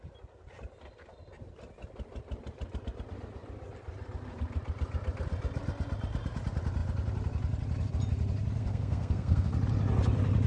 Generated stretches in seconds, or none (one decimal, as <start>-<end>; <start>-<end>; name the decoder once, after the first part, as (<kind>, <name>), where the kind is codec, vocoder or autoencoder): 8.6-9.5 (codec, SNAC)